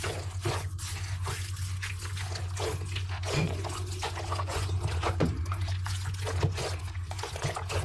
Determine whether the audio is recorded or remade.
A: remade